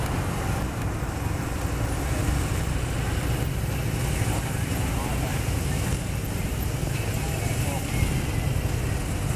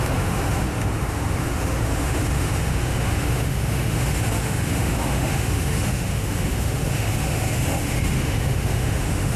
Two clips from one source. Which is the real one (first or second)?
first